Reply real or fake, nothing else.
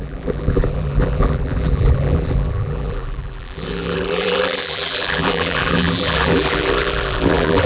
fake